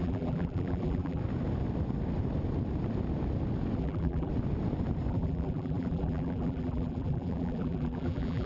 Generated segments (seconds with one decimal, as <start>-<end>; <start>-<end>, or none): 0.0-1.2; 3.8-4.3; 5.1-8.5